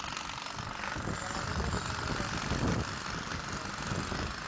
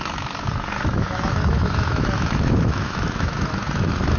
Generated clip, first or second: second